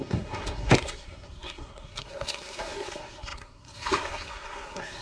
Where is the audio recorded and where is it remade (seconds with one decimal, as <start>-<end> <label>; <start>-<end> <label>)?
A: 0.0-5.0 remade